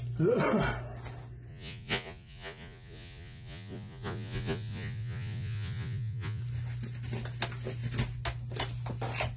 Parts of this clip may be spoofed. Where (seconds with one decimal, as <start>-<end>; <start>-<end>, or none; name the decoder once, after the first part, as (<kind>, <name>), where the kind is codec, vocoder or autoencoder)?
1.5-6.4 (vocoder, Vocos)